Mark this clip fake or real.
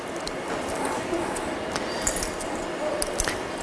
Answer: fake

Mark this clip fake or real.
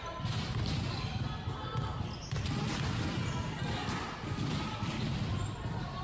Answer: real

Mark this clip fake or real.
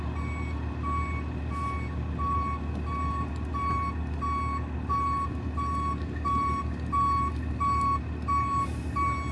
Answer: real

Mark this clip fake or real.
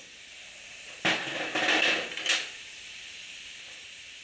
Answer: real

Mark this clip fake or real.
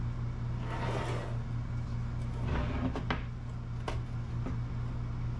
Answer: real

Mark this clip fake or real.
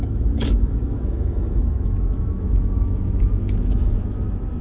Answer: fake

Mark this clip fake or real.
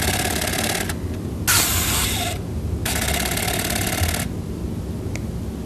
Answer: real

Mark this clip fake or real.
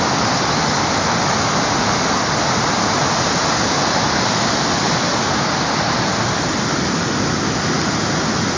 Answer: real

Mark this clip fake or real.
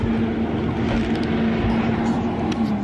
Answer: real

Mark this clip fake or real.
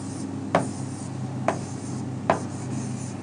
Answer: real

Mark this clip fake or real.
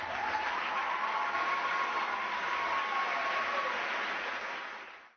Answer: real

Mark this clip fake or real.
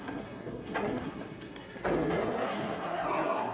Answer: fake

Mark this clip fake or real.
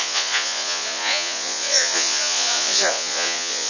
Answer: fake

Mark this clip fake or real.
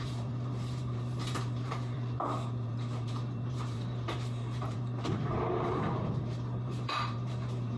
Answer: fake